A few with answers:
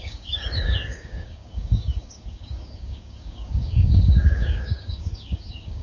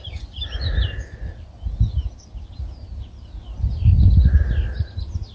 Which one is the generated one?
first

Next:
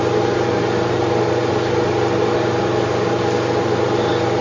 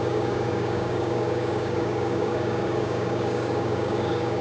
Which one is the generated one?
second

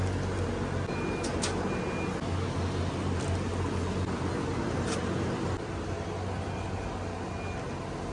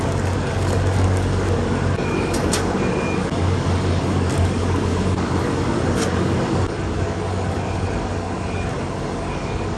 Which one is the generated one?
second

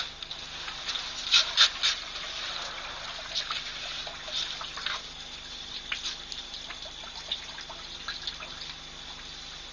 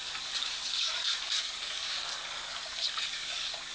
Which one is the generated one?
second